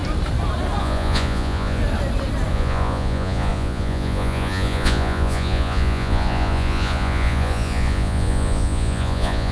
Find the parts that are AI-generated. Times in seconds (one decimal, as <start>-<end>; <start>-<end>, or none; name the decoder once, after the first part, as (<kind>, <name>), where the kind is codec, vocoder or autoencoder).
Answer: 0.8-1.8 (vocoder, Vocos); 2.5-9.5